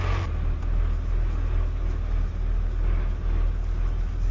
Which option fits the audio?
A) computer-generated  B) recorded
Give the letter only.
B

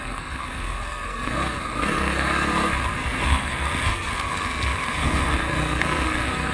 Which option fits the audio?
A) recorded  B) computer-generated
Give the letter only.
B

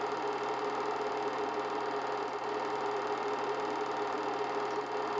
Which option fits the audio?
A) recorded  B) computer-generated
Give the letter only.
A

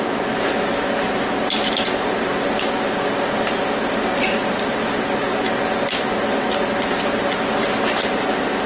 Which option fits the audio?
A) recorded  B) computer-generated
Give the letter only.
A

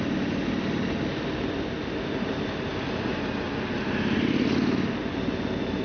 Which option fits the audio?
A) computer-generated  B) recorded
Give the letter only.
B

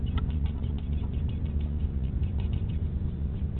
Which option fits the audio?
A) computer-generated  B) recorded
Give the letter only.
A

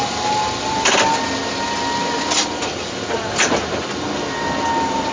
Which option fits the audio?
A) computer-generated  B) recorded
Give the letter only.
B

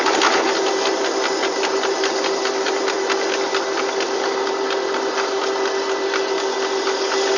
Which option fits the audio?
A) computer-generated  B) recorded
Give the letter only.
B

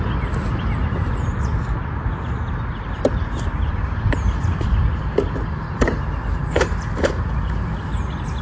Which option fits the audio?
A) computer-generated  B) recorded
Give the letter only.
B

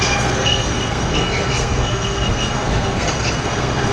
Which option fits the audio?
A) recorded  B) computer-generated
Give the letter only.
B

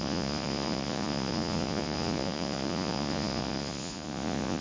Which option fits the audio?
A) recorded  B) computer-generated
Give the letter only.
B